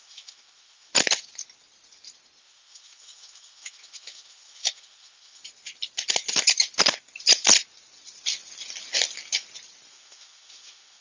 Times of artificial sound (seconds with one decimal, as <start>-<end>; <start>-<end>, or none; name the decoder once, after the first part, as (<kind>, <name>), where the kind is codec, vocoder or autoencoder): 0.0-0.9 (autoencoder, DAC-VAE); 2.4-5.4; 9.9-11.0